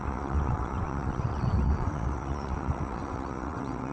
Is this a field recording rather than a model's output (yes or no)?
no